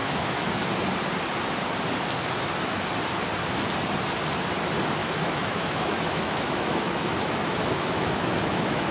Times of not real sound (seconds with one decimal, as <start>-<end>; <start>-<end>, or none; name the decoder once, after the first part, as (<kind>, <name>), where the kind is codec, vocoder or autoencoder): 0.0-0.7 (autoencoder, DAC-VAE); 5.0-8.9